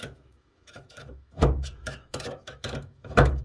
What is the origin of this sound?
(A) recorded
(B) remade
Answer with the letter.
B